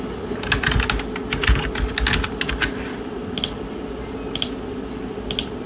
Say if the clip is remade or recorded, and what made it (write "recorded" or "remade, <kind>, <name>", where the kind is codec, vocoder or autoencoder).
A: recorded